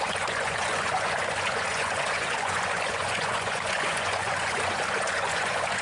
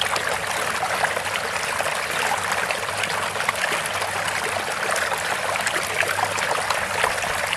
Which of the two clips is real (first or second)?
second